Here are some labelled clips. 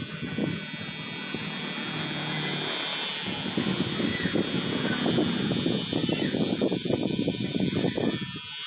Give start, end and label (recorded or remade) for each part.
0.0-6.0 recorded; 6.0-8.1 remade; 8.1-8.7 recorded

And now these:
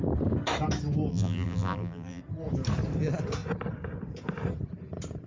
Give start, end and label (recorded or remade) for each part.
0.0-1.1 recorded; 1.1-2.2 remade; 2.2-5.3 recorded

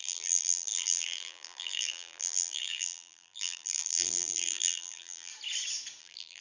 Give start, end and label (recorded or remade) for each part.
0.0-5.3 remade; 5.3-6.0 recorded; 6.0-6.4 remade

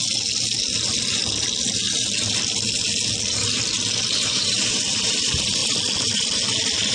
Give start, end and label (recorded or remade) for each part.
0.0-4.1 recorded; 4.1-5.6 remade; 5.6-6.9 recorded

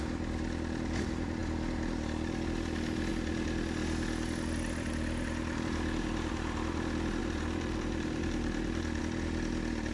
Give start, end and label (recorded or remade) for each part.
0.0-7.2 recorded; 7.2-9.0 remade; 9.0-9.9 recorded

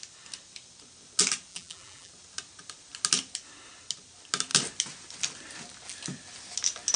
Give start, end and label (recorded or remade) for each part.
0.0-1.5 recorded; 1.5-2.1 remade; 2.1-7.0 recorded